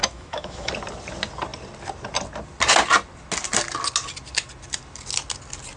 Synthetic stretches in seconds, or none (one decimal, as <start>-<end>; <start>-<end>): 0.0-0.7

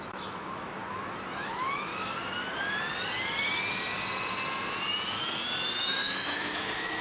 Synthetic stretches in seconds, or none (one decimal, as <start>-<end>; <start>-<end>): 0.0-0.8; 1.4-1.9; 5.9-7.0

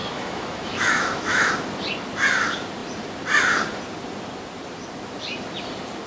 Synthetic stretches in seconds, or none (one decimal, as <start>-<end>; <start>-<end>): 0.0-1.5

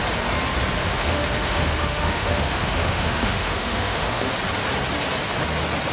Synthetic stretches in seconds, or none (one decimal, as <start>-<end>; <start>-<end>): 0.8-4.3

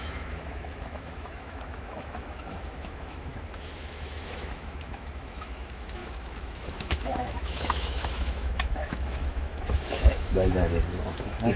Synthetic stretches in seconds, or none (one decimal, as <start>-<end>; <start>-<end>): 0.0-10.5; 11.1-11.6

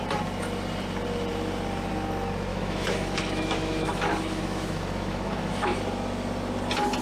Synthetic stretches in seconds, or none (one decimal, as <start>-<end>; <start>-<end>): 2.5-5.8